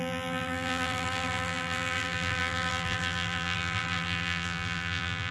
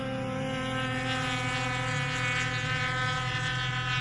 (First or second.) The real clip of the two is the second